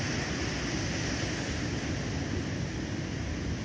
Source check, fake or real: real